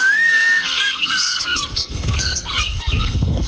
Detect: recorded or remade remade